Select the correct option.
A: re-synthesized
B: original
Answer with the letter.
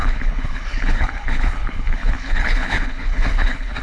A